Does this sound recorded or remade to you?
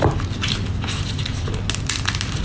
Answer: recorded